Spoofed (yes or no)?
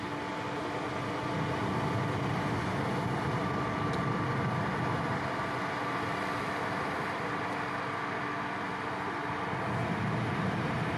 no